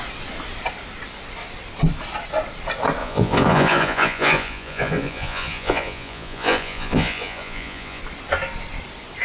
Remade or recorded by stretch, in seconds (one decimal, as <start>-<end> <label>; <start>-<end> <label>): 0.0-3.0 recorded; 3.0-8.0 remade; 8.0-9.2 recorded